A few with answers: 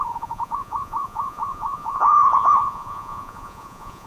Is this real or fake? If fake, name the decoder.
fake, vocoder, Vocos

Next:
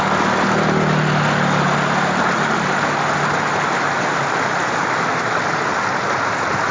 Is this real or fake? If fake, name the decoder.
real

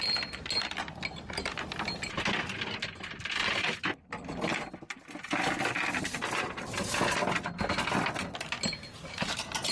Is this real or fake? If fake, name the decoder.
real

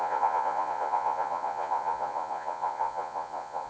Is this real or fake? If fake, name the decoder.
fake, vocoder, Vocos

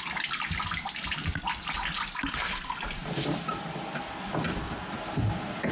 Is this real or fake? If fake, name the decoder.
real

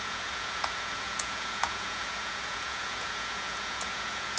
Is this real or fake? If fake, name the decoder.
fake, vocoder, Vocos